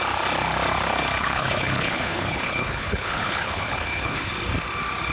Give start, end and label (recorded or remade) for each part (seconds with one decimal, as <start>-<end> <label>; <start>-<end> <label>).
0.0-1.2 recorded; 1.2-4.3 remade; 4.3-5.1 recorded